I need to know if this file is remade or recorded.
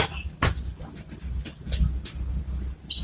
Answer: recorded